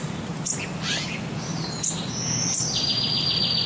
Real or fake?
real